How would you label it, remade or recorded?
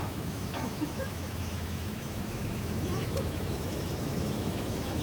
remade